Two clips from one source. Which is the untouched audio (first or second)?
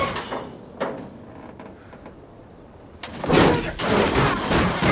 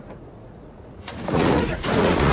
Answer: first